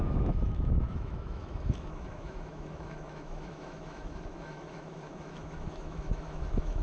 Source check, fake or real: fake